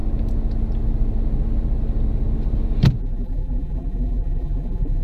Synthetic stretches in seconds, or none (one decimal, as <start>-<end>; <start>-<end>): 3.0-5.0